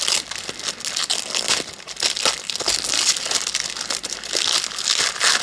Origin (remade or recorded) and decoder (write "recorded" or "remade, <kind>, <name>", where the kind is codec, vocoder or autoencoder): recorded